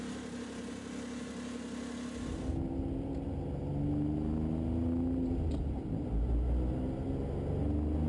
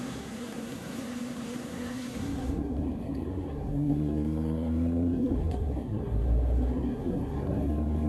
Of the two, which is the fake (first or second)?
second